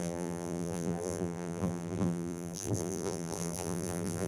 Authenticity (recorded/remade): remade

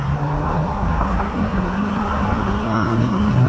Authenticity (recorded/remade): remade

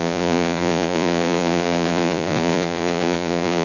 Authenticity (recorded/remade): remade